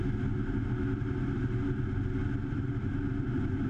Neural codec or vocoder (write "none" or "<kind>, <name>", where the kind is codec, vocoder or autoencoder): none